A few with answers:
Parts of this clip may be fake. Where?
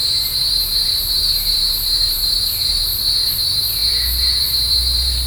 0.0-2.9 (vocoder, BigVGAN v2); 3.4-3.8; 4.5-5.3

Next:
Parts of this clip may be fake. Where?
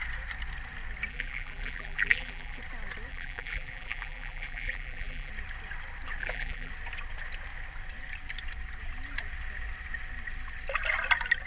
1.1-2.6 (vocoder, BigVGAN v2); 3.1-5.3; 6.2-6.7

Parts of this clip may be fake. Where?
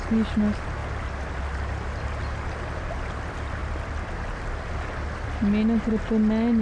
3.6-4.7 (vocoder, BigVGAN v2)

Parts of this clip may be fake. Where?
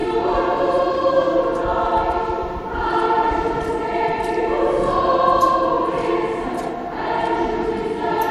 0.0-1.3 (vocoder, BigVGAN v2); 2.4-4.5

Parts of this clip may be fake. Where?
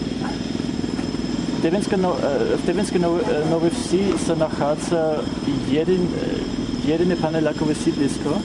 2.0-2.9 (vocoder, BigVGAN v2); 3.8-6.1; 7.3-8.4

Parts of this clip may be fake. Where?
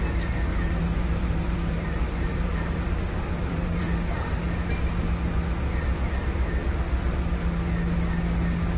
0.5-3.8 (vocoder, BigVGAN v2)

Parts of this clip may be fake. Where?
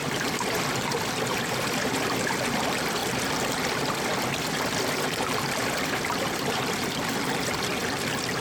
0.0-3.0 (vocoder, BigVGAN v2); 5.6-8.4